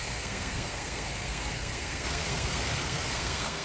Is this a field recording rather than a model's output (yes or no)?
no